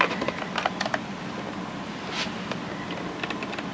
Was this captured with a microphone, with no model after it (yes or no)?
yes